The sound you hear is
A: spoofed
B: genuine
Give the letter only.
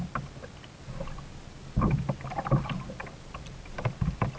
B